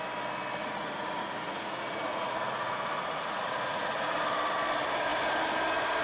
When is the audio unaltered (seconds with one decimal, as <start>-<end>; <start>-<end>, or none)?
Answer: 0.0-0.6; 4.2-6.0